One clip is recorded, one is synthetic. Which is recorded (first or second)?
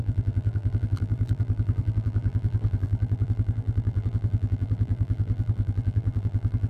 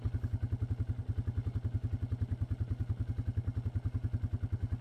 second